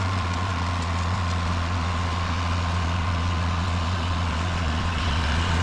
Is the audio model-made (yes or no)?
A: yes